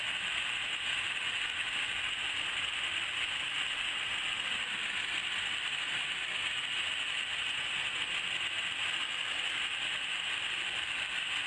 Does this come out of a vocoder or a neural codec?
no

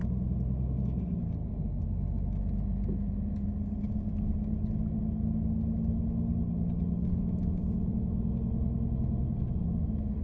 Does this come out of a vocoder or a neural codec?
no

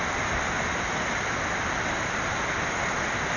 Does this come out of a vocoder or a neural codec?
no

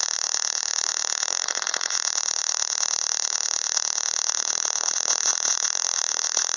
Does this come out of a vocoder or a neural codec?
yes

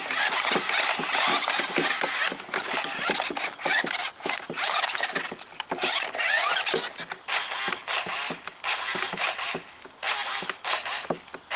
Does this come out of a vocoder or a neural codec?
no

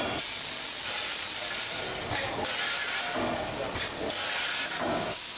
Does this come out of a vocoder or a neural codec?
no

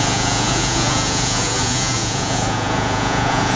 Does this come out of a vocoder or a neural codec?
yes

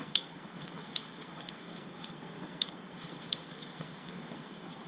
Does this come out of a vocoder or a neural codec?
yes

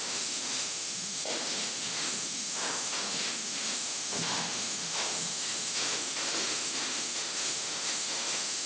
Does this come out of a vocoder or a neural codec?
yes